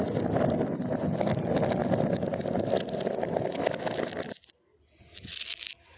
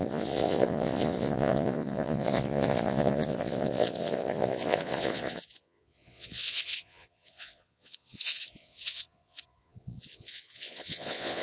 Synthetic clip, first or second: second